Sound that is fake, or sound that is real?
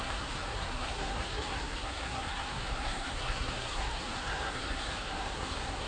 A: fake